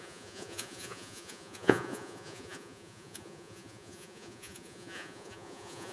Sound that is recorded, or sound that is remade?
remade